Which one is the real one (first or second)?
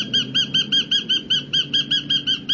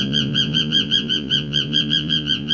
first